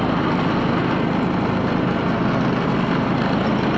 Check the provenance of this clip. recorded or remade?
recorded